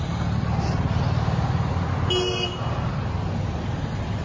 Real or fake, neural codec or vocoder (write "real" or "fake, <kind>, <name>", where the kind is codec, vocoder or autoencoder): real